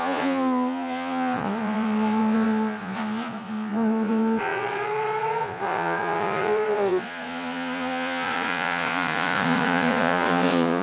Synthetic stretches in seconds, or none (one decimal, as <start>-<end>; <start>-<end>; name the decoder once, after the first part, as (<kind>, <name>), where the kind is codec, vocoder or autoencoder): 0.0-10.8 (vocoder, Vocos)